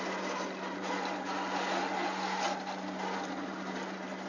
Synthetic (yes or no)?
no